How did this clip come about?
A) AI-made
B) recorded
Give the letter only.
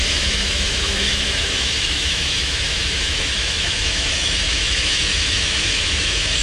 A